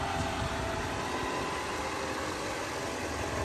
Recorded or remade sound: recorded